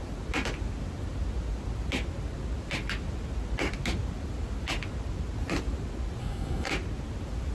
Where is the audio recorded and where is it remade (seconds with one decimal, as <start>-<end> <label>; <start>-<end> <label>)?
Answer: 0.0-6.2 recorded; 6.2-6.7 remade; 6.7-7.5 recorded